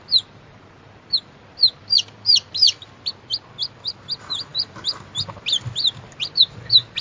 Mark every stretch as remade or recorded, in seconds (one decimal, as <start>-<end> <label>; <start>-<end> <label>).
0.0-7.0 recorded